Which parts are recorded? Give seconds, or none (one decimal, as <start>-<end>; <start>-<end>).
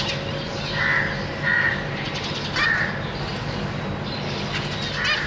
0.0-5.3